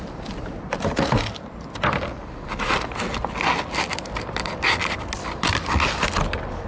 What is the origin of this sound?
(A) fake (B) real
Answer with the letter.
B